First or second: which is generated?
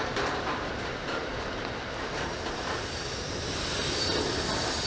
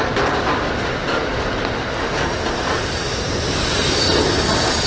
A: first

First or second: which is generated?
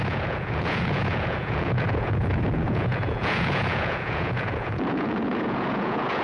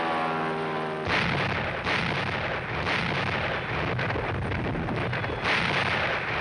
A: first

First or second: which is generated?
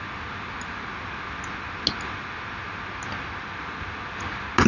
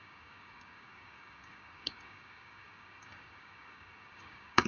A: second